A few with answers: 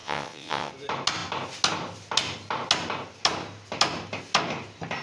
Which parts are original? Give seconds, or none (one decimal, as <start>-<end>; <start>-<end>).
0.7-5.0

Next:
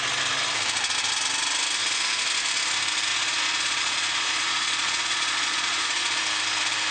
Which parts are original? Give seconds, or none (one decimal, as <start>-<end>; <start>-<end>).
0.0-3.1; 6.2-6.9

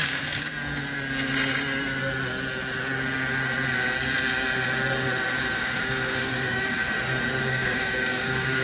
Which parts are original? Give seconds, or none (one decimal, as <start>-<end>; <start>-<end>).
0.5-5.5; 6.8-7.4

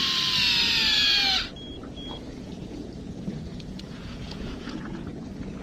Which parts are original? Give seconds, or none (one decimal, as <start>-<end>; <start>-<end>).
0.0-1.7; 5.1-5.6

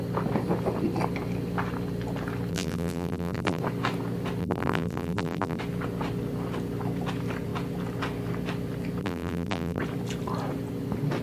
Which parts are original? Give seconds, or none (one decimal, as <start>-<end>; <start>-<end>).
0.0-2.5; 3.6-4.4; 5.6-9.0; 9.8-11.2